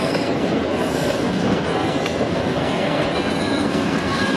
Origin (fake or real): fake